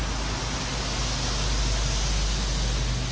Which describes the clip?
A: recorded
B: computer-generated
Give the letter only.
A